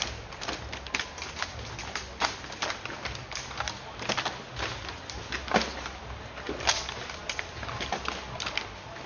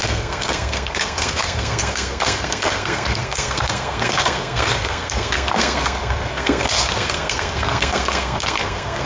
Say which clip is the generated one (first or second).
second